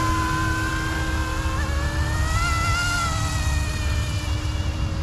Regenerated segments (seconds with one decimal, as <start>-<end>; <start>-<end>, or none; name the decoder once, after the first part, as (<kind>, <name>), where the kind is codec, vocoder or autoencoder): none